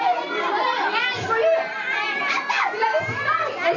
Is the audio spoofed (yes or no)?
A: no